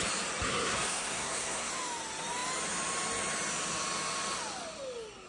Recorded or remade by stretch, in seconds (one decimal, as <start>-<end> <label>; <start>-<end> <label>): 0.0-0.5 recorded; 0.5-1.7 remade; 1.7-5.3 recorded